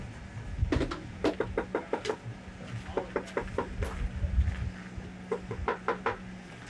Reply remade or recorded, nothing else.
recorded